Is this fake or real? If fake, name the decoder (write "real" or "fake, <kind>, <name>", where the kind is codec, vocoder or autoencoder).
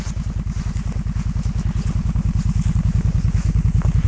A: real